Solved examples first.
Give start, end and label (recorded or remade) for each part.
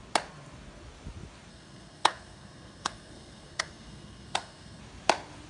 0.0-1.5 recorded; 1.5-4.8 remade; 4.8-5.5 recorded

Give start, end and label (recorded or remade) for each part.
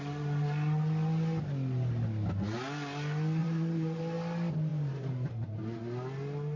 0.0-3.4 recorded; 3.4-4.0 remade; 4.0-4.7 recorded; 4.7-5.8 remade; 5.8-6.6 recorded